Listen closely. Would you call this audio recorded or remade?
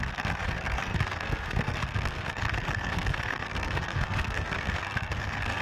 remade